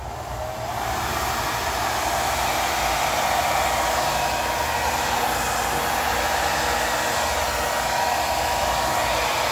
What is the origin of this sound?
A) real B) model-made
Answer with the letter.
A